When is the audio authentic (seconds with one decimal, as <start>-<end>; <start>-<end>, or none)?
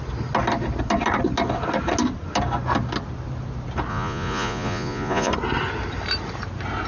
0.0-3.9; 5.3-6.9